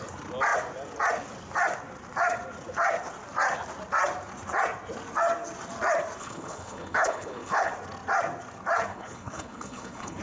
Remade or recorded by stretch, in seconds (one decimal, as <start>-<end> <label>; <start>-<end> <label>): 0.0-6.2 recorded; 6.2-7.7 remade; 7.7-8.9 recorded; 8.9-10.2 remade